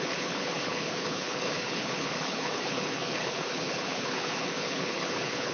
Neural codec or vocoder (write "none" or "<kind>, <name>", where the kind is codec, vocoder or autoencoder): codec, HILCodec